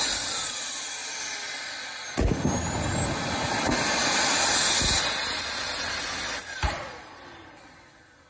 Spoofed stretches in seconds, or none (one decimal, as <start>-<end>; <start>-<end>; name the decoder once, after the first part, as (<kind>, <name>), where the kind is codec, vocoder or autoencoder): none